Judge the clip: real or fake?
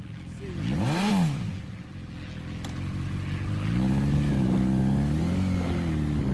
real